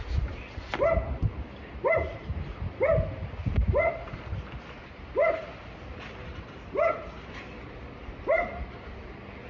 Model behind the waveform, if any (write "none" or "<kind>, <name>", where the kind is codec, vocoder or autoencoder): none